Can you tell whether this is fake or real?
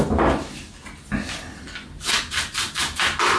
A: real